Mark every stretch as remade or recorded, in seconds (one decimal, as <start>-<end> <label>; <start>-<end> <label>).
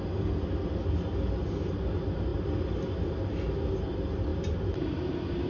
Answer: 0.0-5.5 recorded